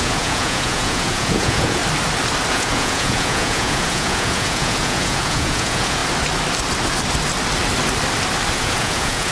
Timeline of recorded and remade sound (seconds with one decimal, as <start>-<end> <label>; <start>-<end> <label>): 0.0-1.8 remade; 1.8-2.5 recorded; 2.5-6.0 remade; 6.0-8.5 recorded; 8.5-9.3 remade